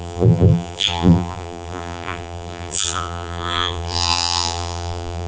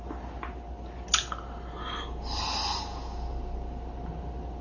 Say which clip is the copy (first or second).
first